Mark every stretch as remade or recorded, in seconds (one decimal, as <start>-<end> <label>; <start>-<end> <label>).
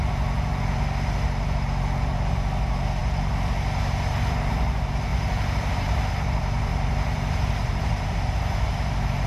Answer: 0.0-5.1 recorded; 5.1-6.1 remade; 6.1-6.7 recorded; 6.7-9.3 remade